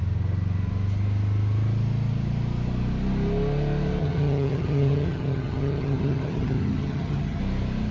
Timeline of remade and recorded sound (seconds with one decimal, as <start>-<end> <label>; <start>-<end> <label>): 0.0-4.0 recorded; 4.0-7.4 remade; 7.4-7.9 recorded